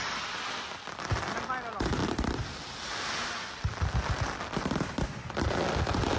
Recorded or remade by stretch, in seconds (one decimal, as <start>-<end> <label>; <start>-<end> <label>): 0.0-6.2 recorded